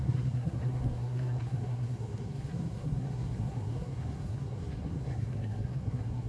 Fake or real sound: fake